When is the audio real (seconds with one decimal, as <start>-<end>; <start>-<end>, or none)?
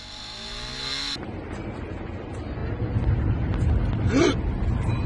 0.0-5.1